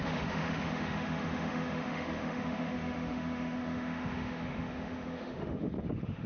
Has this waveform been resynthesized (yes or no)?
yes